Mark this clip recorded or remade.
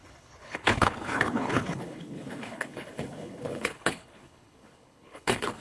remade